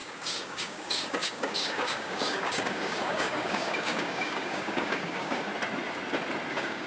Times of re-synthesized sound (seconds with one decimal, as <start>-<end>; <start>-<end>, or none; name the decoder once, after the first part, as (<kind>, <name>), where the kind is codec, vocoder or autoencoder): 0.0-5.5 (codec, DAC); 6.5-6.9